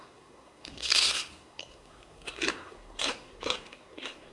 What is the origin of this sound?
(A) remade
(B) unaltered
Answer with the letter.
A